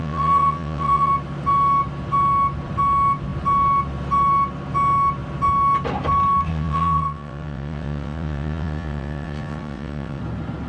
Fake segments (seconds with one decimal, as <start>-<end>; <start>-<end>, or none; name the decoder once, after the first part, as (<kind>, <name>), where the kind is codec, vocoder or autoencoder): 0.0-1.1 (vocoder, WaveNeXt); 6.5-10.2

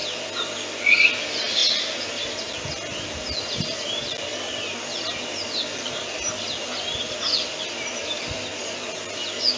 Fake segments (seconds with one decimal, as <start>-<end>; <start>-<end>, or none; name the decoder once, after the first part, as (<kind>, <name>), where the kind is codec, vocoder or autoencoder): none

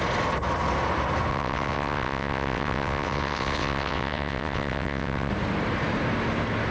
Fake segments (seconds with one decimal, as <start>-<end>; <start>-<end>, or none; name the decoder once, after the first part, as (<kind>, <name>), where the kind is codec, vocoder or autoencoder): 1.3-5.3 (vocoder, WaveNeXt)

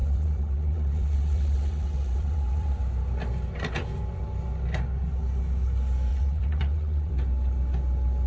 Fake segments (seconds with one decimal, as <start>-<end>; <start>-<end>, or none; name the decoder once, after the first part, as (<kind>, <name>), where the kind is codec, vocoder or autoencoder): 0.0-2.8 (vocoder, WaveNeXt); 6.1-7.1

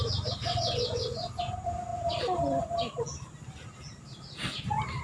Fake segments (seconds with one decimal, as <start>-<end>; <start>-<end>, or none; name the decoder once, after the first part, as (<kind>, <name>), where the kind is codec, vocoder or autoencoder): 0.4-1.4 (vocoder, WaveNeXt)

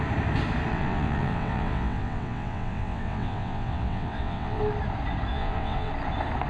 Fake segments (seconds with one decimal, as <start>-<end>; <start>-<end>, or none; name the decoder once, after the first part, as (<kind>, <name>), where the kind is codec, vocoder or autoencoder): 0.7-4.6 (vocoder, WaveNeXt); 5.3-5.9